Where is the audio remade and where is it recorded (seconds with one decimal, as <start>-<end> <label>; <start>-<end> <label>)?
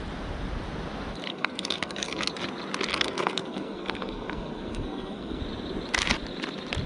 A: 0.0-1.3 recorded; 1.3-2.3 remade; 2.3-2.9 recorded; 2.9-5.4 remade; 5.4-6.9 recorded